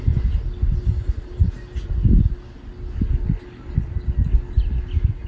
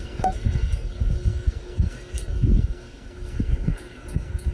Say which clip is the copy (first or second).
second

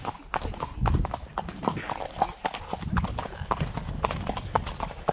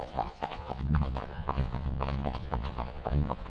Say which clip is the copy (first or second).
second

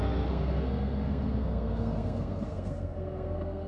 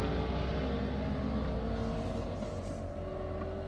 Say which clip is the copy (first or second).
first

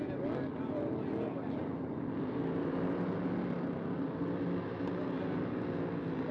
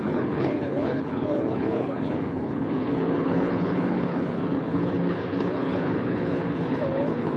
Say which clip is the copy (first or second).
second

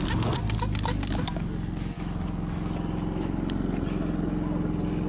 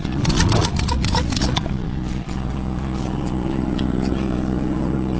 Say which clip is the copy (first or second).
second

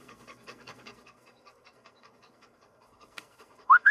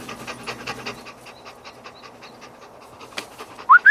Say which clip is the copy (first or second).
first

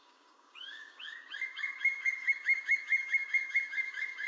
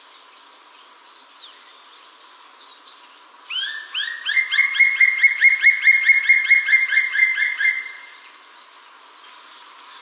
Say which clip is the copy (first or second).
first